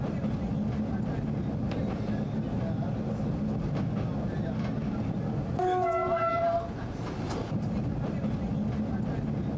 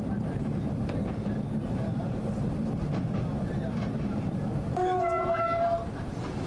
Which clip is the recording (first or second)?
first